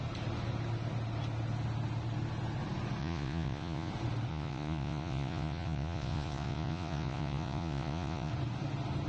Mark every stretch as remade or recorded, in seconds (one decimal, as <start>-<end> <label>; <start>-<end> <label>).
0.0-3.0 recorded; 3.0-3.9 remade; 3.9-4.3 recorded; 4.3-8.3 remade; 8.3-9.1 recorded